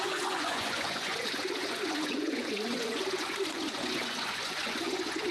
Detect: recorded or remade remade